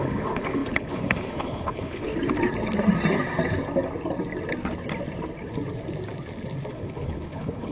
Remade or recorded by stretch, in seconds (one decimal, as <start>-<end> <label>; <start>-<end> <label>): 0.0-2.1 remade; 2.1-6.7 recorded; 6.7-7.7 remade